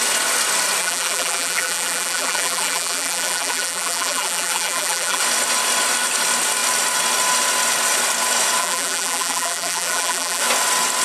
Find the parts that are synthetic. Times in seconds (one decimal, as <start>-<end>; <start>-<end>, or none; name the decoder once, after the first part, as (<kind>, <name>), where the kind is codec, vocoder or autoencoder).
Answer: 0.8-5.2 (vocoder, BigVGAN v2); 8.6-10.4